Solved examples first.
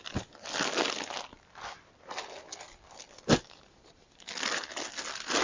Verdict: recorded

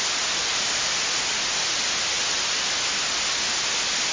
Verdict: recorded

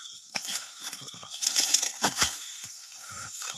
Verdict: remade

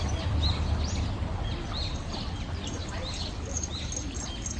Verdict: recorded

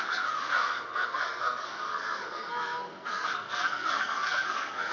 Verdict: remade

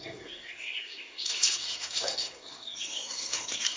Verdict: remade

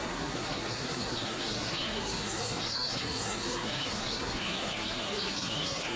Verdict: remade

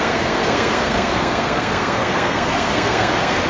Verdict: remade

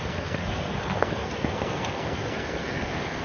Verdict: remade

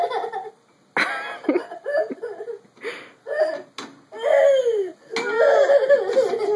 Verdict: recorded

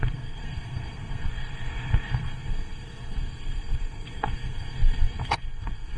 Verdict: remade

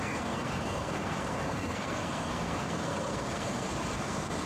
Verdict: remade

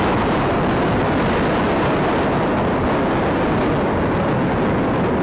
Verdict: recorded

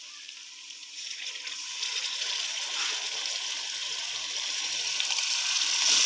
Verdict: recorded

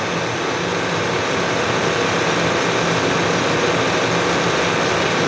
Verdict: recorded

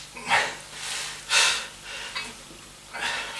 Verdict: recorded